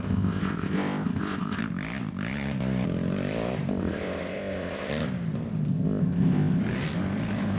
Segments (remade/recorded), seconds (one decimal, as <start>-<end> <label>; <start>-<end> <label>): 0.0-1.6 remade; 1.6-3.7 recorded; 3.7-4.9 remade; 4.9-5.7 recorded; 5.7-6.6 remade; 6.6-7.6 recorded